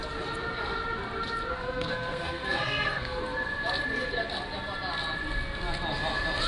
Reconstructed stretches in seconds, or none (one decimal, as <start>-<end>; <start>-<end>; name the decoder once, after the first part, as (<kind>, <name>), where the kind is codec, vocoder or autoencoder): 1.5-3.2 (codec, SNAC)